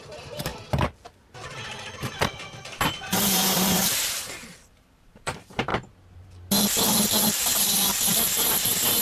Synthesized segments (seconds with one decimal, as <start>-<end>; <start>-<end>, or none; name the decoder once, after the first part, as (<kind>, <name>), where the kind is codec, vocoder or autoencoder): 0.0-0.5 (vocoder, BigVGAN v2); 2.6-5.7; 7.4-9.0